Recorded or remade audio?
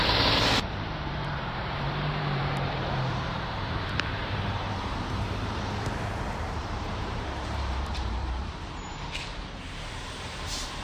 remade